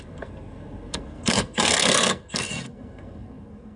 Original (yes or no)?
no